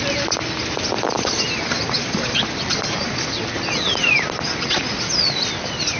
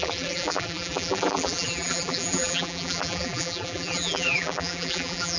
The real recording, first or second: first